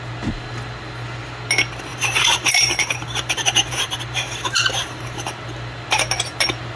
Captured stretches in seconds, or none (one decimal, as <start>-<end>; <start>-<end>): 0.0-1.9; 5.3-6.8